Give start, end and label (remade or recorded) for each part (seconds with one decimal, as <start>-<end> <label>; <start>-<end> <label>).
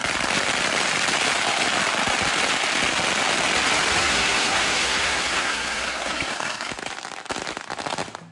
0.0-4.0 recorded; 4.0-6.7 remade; 6.7-8.3 recorded